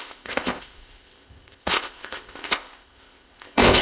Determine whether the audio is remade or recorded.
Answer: remade